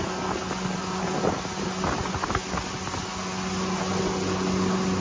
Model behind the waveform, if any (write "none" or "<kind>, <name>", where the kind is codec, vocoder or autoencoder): none